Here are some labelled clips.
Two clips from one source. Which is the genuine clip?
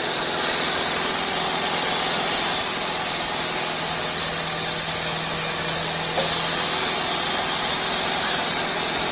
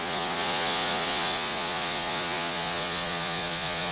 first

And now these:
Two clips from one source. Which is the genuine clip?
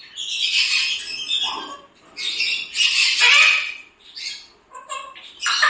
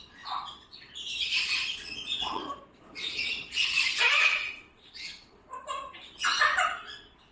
first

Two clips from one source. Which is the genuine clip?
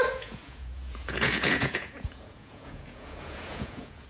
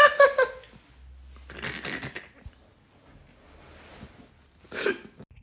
second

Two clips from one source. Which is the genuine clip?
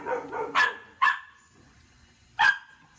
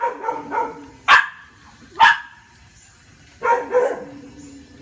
second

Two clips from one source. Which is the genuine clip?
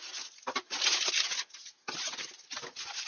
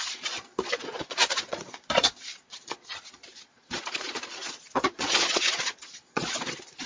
first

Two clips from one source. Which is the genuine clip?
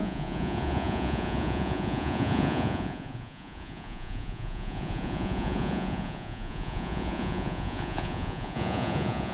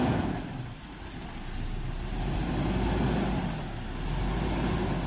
second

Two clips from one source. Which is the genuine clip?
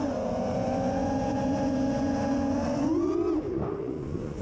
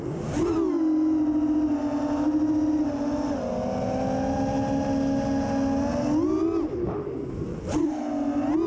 second